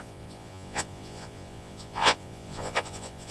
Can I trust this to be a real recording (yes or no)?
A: no